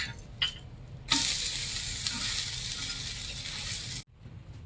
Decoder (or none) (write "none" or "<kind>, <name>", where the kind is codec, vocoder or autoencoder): none